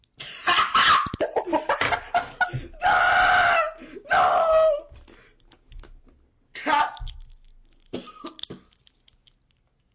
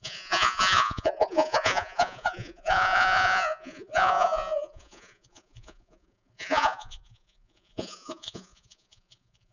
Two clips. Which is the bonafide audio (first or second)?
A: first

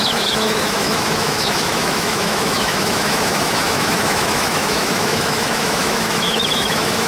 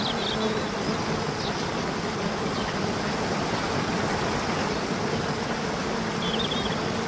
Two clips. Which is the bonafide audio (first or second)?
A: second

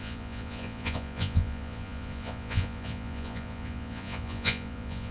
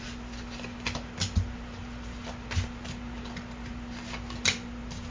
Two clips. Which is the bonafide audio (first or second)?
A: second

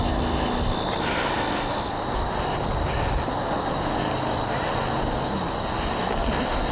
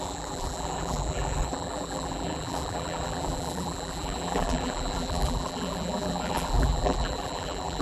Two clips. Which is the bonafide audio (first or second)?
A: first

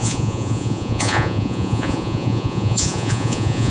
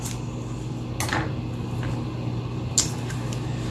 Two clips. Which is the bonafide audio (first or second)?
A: second